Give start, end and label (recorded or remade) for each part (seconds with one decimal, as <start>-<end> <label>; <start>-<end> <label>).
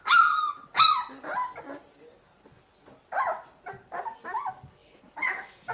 0.0-5.7 recorded